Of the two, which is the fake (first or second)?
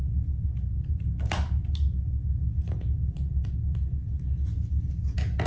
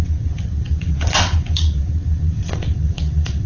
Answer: second